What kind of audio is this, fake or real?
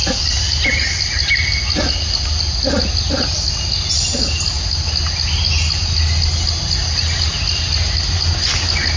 real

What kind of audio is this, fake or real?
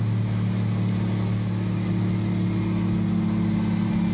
real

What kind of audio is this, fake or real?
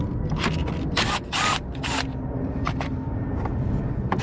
real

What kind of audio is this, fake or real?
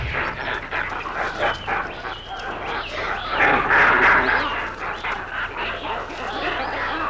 real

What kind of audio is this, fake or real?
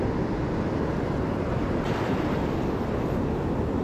real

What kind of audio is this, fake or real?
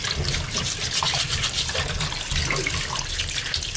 real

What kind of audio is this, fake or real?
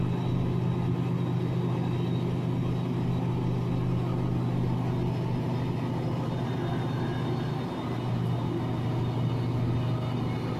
real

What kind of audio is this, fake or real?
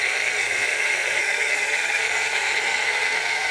fake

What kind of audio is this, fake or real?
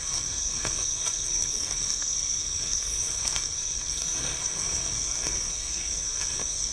fake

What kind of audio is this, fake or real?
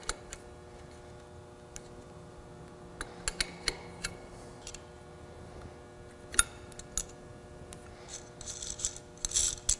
real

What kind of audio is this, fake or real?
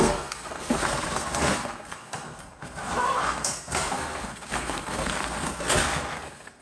fake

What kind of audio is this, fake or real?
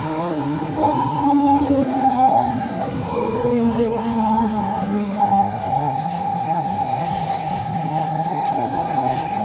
fake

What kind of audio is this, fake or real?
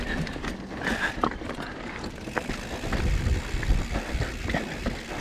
real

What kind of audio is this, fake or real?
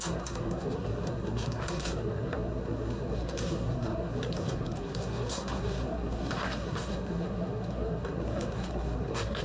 fake